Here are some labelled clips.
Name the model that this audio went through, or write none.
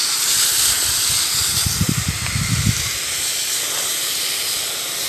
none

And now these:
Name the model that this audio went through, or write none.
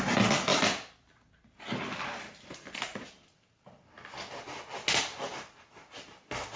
none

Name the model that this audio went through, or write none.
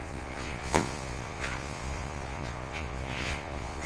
vocoder, Vocos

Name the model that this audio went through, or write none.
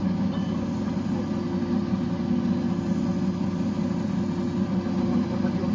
none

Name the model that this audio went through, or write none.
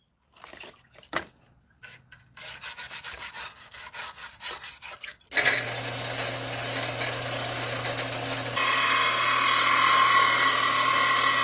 none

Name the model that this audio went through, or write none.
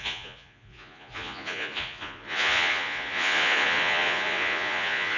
vocoder, Vocos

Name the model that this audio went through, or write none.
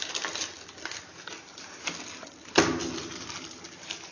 none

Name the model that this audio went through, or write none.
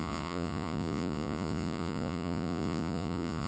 vocoder, Vocos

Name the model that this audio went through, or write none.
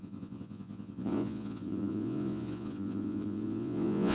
vocoder, Vocos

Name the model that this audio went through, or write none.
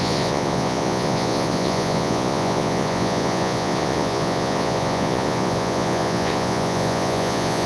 vocoder, Vocos